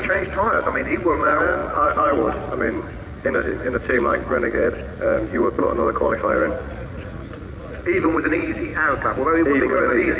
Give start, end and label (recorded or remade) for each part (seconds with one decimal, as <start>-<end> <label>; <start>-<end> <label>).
0.0-8.7 remade; 8.7-9.6 recorded; 9.6-10.2 remade